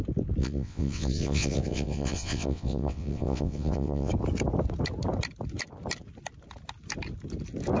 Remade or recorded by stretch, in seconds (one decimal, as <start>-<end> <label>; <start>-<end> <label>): 0.0-0.4 recorded; 0.4-4.1 remade; 4.1-7.8 recorded